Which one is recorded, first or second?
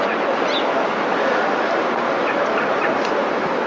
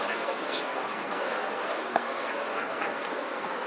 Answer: first